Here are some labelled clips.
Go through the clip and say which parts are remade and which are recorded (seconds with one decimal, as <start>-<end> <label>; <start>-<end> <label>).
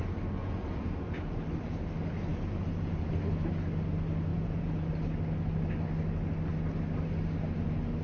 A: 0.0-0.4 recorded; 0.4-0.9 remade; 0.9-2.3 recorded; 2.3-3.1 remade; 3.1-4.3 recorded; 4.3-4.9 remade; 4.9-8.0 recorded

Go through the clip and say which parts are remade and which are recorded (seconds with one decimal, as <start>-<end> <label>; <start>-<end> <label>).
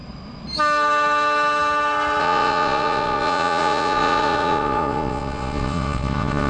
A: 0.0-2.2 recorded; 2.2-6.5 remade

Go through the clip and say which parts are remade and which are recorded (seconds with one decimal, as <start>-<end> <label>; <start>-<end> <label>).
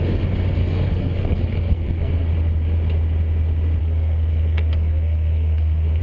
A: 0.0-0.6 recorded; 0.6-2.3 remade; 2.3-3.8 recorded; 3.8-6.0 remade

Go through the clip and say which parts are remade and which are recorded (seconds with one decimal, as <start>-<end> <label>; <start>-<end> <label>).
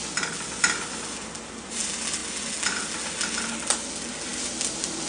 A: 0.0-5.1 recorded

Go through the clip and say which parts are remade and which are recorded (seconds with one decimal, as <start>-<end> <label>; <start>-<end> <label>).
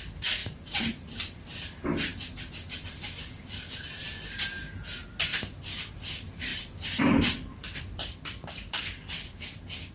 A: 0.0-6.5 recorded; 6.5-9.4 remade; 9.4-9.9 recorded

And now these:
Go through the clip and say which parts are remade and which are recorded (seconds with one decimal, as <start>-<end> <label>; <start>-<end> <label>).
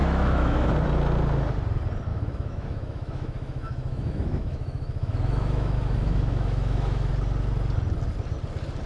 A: 0.0-0.7 remade; 0.7-2.1 recorded; 2.1-7.1 remade; 7.1-8.9 recorded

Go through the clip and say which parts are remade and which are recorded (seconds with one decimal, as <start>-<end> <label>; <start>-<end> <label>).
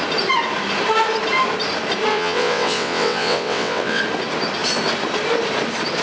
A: 0.0-2.1 recorded; 2.1-4.0 remade; 4.0-6.0 recorded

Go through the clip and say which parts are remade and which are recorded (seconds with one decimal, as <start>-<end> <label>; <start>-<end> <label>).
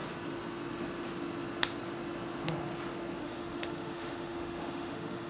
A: 0.0-3.2 recorded; 3.2-5.3 remade